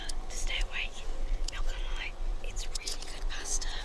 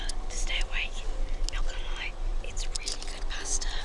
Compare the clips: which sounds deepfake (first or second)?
first